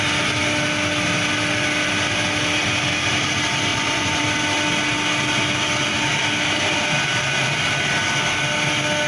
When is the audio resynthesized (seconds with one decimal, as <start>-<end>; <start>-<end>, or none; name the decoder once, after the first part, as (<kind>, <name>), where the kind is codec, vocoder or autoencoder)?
3.7-4.2 (vocoder, Vocos)